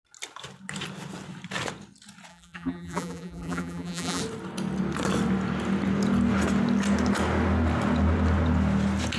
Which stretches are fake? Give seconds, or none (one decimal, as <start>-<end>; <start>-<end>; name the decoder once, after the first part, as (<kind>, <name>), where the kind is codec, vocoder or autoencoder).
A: 2.3-4.2 (vocoder, BigVGAN v2)